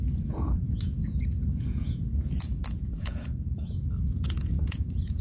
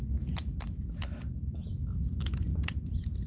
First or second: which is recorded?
second